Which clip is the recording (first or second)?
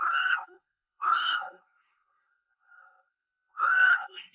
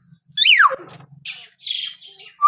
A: second